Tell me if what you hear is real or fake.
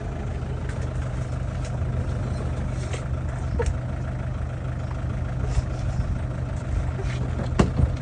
real